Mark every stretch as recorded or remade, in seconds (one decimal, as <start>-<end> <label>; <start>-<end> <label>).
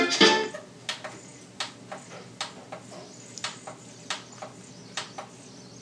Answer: 0.0-5.8 recorded